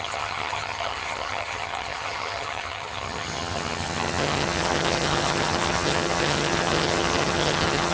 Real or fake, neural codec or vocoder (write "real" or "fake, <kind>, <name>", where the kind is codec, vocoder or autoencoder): fake, vocoder, HiFi-GAN